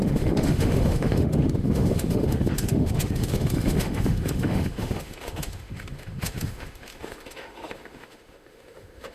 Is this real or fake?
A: fake